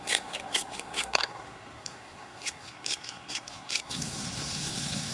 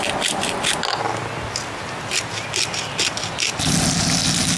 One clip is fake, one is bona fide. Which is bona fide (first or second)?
second